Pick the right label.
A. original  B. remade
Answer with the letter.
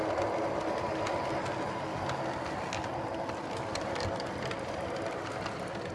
A